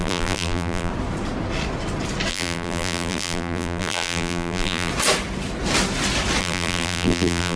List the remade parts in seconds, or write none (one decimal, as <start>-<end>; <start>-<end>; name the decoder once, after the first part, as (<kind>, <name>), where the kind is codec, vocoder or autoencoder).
0.0-0.9 (vocoder, BigVGAN v2); 2.3-4.9; 6.4-7.6